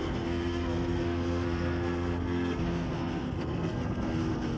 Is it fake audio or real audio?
fake